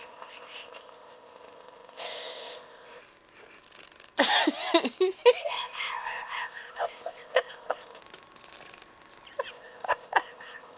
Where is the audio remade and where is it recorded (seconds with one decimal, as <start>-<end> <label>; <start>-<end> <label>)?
0.0-3.0 remade; 3.0-5.4 recorded; 5.4-8.0 remade; 8.0-9.5 recorded; 9.5-10.8 remade